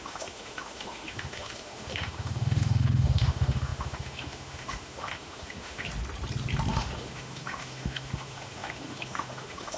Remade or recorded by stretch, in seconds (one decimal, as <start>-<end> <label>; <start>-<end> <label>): 0.0-5.9 remade; 5.9-6.7 recorded; 6.7-9.8 remade